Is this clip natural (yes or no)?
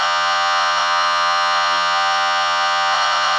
no